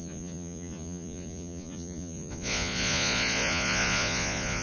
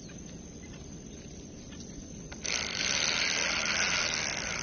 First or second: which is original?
second